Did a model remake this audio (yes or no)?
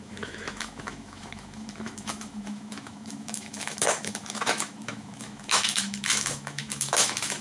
yes